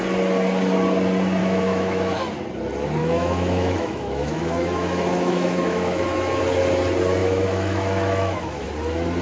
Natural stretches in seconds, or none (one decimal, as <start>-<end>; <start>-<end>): 0.0-1.4; 2.3-3.0; 6.4-7.2; 8.7-9.2